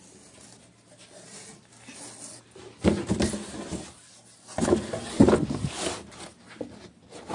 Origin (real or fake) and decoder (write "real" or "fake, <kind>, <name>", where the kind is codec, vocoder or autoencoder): real